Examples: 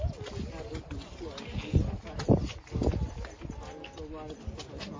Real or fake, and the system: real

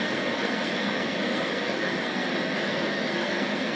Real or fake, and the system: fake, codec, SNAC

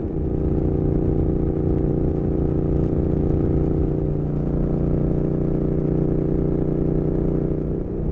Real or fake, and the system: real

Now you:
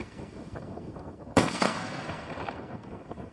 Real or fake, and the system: fake, codec, SNAC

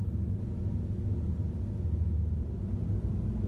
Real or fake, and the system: real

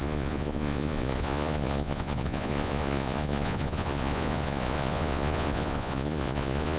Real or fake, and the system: fake, vocoder, Vocos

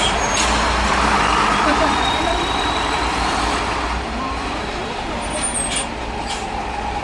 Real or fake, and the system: fake, vocoder, BigVGAN v2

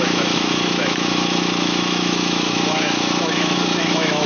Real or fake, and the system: fake, autoencoder, DAC-VAE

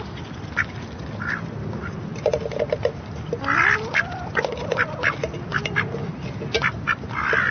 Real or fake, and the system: real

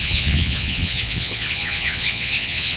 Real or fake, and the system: fake, vocoder, Vocos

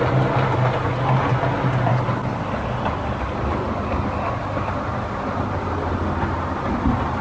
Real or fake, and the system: real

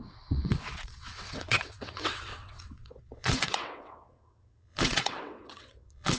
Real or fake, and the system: fake, vocoder, WaveNeXt